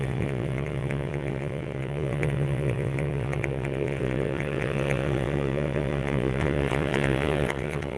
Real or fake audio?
fake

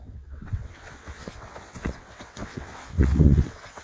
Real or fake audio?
fake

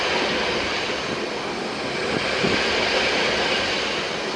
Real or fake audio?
real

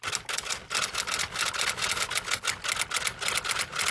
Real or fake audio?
real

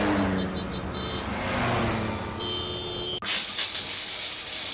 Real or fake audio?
real